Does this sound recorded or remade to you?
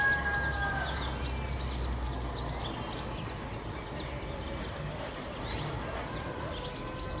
recorded